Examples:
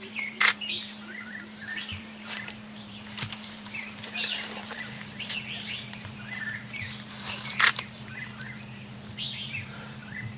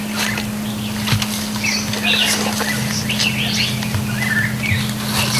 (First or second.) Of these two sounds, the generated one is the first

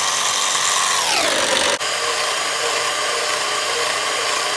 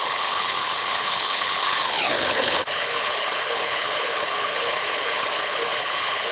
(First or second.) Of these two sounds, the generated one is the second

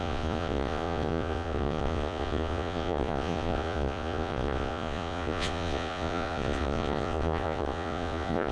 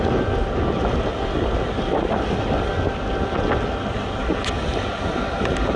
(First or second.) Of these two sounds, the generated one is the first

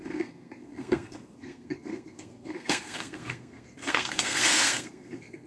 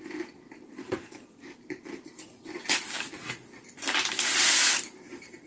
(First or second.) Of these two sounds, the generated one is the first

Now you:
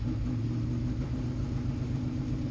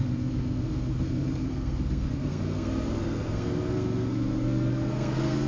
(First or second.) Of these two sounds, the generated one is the second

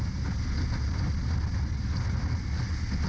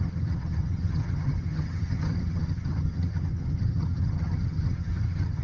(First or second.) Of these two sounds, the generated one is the second